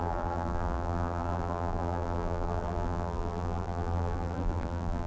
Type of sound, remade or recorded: remade